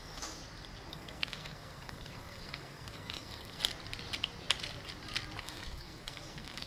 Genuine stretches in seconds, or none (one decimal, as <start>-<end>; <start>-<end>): 0.4-0.9; 3.6-5.4